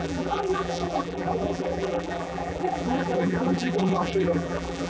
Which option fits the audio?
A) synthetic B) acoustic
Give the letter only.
A